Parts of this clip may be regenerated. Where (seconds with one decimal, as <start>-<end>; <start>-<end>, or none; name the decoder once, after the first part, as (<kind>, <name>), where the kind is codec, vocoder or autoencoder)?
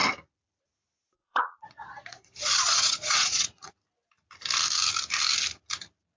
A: 1.2-3.7 (vocoder, Vocos)